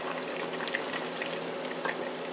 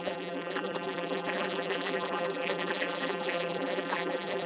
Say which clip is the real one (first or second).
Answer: first